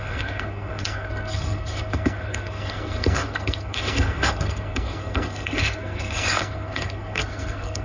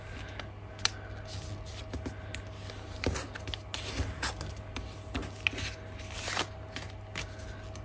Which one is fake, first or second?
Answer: first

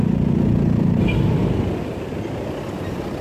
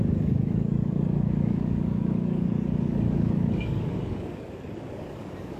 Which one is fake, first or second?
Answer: second